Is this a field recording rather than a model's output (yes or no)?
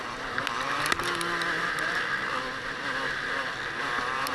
yes